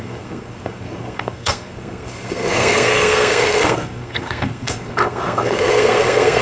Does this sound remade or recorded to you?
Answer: remade